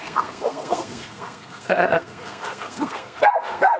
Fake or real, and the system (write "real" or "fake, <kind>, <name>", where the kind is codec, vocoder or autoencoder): fake, codec, SNAC